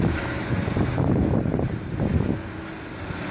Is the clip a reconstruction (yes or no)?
no